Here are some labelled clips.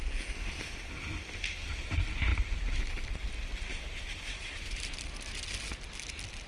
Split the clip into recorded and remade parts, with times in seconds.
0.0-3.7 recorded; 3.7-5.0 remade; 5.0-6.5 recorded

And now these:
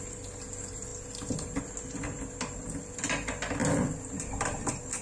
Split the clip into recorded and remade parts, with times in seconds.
0.0-5.0 recorded

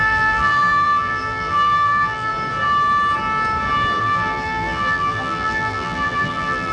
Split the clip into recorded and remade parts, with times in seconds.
0.0-2.3 remade; 2.3-4.0 recorded; 4.0-6.7 remade